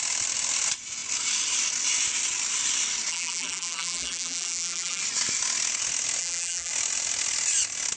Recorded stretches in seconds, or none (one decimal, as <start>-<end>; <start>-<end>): 0.0-3.1; 5.0-6.2; 6.7-8.0